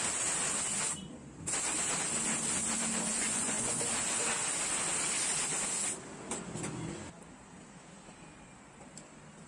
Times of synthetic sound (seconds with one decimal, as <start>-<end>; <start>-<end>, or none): 3.1-3.9